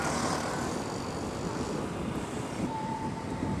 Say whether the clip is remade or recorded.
recorded